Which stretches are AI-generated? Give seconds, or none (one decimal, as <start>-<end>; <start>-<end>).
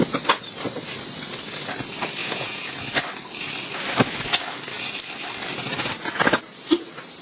2.2-2.8